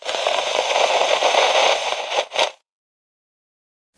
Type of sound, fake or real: fake